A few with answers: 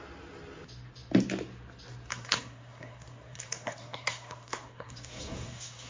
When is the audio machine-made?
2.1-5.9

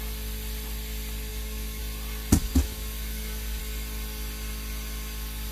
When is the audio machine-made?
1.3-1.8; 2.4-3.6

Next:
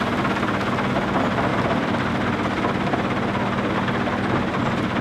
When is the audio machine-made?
none

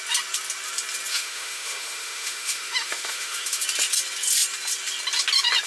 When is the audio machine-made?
1.1-3.6

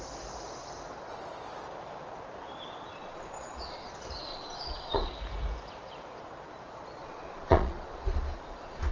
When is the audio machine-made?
3.0-3.9; 4.3-5.1; 7.0-8.9

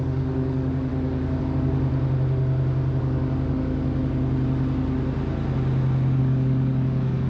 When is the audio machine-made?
0.0-0.9; 1.4-1.9; 3.0-4.0; 6.2-7.3

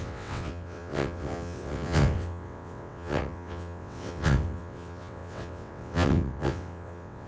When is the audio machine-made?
0.0-7.3